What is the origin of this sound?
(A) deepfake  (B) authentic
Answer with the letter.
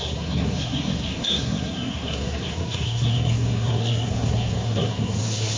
A